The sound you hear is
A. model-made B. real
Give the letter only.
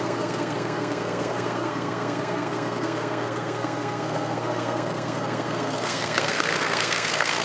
A